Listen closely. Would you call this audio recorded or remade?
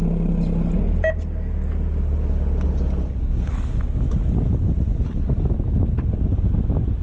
recorded